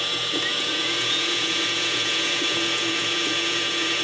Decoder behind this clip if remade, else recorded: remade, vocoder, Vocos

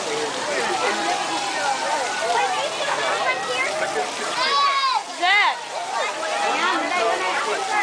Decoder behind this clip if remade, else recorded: recorded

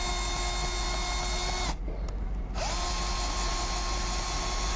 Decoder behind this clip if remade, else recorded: recorded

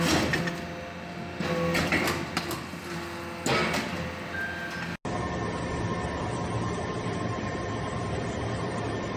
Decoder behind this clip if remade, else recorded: recorded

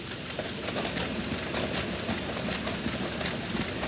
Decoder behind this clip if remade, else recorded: recorded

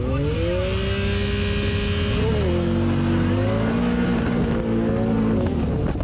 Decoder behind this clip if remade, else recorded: recorded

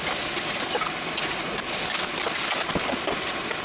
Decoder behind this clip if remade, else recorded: recorded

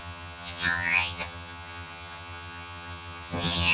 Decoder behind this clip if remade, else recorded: remade, vocoder, HiFi-GAN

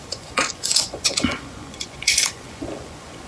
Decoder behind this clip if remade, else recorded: remade, vocoder, Vocos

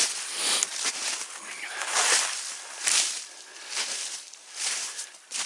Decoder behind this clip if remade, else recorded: remade, vocoder, BigVGAN v2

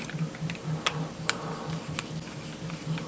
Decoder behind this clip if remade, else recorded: recorded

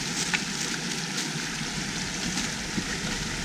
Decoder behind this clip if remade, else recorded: recorded